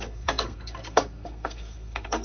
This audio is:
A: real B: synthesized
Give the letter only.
B